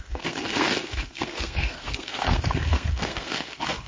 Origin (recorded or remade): remade